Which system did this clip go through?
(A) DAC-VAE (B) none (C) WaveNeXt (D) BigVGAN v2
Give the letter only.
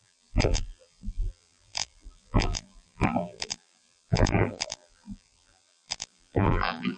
D